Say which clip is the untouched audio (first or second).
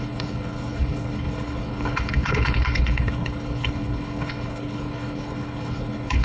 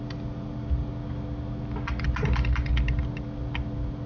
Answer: second